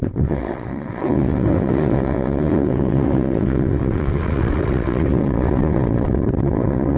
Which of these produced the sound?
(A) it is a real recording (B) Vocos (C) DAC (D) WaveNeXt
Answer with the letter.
D